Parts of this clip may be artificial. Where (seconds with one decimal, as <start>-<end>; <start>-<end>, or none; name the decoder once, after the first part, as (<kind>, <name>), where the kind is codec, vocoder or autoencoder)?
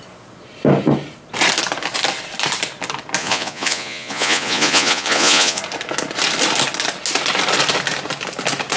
3.2-5.6 (vocoder, Vocos)